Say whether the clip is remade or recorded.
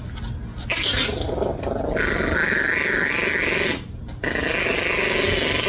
recorded